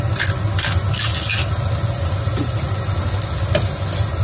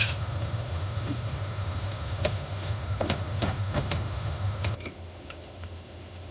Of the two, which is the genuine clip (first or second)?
first